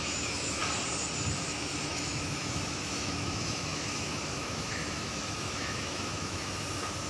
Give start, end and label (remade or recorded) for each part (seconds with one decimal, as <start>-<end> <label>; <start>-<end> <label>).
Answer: 0.0-0.6 remade; 0.6-1.4 recorded; 1.4-7.1 remade